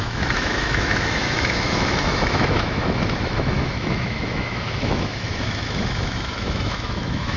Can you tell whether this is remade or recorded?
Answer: remade